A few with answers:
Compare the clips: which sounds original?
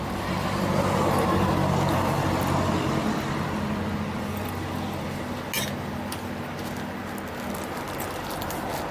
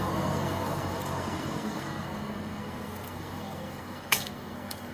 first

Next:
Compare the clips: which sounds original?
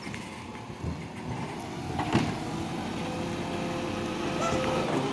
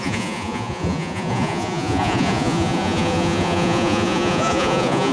first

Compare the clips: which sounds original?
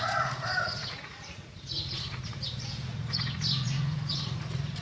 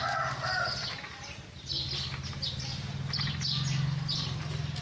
second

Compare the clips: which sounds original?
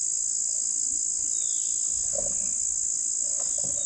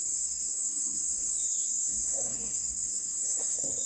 first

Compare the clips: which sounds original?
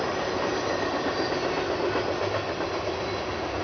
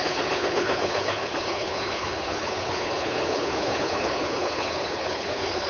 first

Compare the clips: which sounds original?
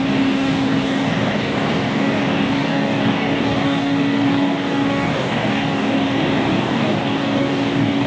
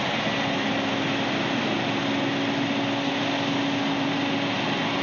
second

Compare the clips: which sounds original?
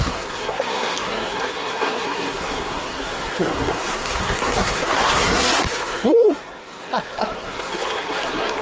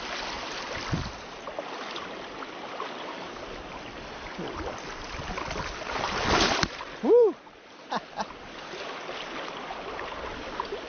second